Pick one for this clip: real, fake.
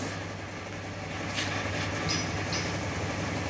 real